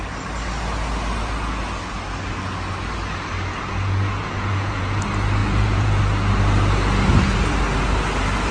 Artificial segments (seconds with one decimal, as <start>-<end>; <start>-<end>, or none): 4.2-5.0; 5.4-6.0